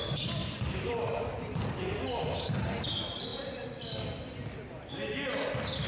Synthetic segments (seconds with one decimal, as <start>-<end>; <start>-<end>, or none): 0.4-2.4